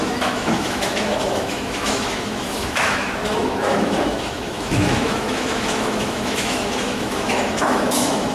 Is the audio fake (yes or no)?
yes